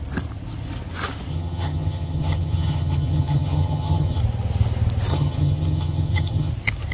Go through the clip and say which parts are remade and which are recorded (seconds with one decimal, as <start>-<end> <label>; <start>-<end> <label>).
0.0-1.3 recorded; 1.3-4.2 remade; 4.2-5.1 recorded; 5.1-6.5 remade; 6.5-6.9 recorded